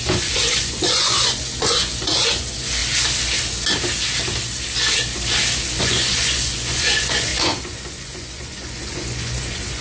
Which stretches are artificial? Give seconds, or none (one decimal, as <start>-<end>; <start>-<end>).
0.0-2.8; 5.8-9.8